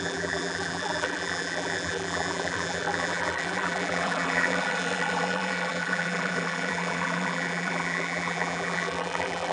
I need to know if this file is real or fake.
fake